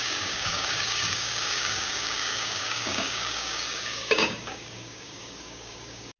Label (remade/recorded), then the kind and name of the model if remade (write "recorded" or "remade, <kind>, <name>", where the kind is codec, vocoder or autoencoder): remade, codec, DAC